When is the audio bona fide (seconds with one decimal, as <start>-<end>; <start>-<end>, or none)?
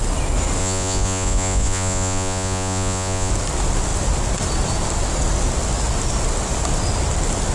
0.0-0.6; 3.3-7.5